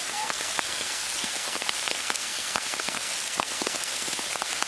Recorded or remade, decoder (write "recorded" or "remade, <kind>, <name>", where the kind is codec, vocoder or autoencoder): remade, codec, SNAC